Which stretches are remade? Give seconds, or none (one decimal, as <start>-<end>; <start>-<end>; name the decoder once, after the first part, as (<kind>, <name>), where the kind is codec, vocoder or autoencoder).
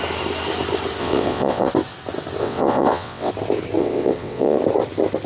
1.0-1.7 (vocoder, WaveNeXt); 2.4-3.3; 3.8-4.6